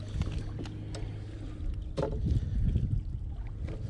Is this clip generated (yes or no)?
no